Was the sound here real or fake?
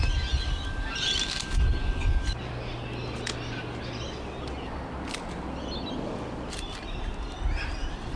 real